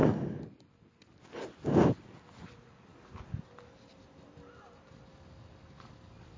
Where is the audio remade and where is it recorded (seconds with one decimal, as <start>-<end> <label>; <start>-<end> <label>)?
0.0-6.4 recorded